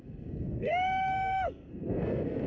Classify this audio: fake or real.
fake